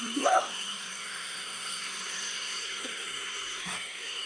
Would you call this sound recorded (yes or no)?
no